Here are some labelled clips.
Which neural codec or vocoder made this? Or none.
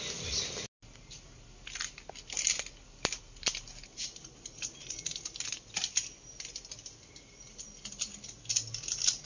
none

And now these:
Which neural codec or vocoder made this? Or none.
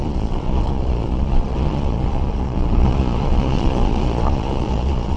vocoder, Vocos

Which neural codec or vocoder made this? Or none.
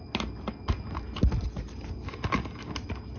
none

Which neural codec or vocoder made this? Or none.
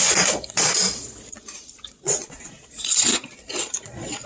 vocoder, Vocos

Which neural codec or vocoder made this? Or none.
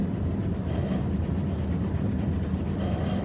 none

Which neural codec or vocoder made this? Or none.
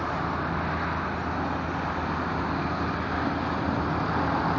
none